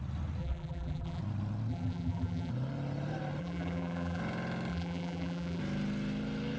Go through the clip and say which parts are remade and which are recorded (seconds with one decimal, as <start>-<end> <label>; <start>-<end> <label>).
0.0-0.4 recorded; 0.4-1.2 remade; 1.2-1.7 recorded; 1.7-2.5 remade; 2.5-3.4 recorded; 3.4-4.2 remade; 4.2-4.7 recorded; 4.7-5.6 remade; 5.6-6.6 recorded